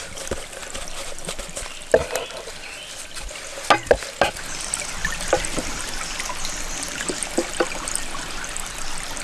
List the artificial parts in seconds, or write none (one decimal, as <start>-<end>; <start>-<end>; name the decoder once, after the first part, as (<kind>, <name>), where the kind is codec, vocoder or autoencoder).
none

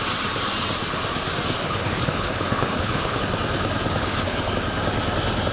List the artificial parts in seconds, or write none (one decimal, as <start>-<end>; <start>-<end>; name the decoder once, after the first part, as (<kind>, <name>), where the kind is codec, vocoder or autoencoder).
1.6-3.2 (codec, HILCodec); 4.0-4.5